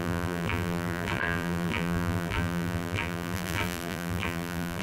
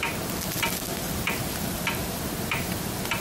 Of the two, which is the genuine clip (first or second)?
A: second